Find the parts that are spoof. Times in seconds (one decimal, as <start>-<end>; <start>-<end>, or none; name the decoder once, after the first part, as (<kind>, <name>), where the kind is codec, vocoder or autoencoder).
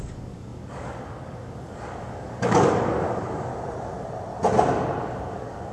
0.0-3.5 (codec, DAC); 5.0-5.7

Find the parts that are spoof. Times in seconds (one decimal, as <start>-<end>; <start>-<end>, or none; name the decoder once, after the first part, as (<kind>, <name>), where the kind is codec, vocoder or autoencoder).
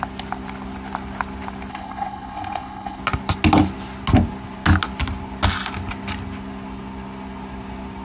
1.7-3.0 (codec, HILCodec)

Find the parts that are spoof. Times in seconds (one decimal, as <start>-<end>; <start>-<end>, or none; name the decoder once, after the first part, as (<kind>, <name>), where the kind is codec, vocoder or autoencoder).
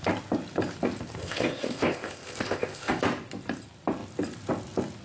1.2-3.0 (codec, ZipCodec)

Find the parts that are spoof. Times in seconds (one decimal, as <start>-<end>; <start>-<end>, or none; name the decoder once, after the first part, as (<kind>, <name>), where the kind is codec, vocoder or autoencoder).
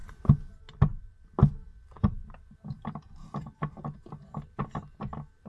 none